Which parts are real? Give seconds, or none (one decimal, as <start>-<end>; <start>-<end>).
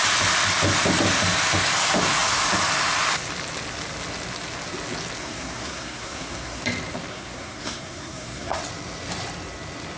0.0-5.2; 6.6-7.1; 8.6-10.0